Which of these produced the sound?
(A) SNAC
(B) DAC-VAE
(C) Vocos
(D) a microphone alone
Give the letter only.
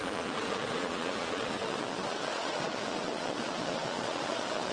C